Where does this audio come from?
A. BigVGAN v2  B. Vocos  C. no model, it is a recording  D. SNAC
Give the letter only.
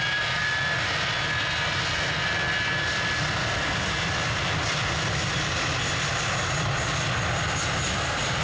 C